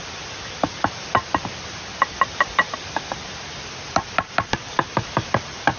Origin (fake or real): fake